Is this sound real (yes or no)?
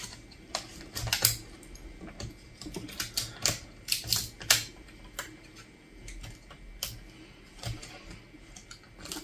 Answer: yes